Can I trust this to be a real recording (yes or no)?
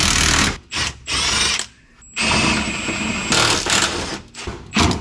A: yes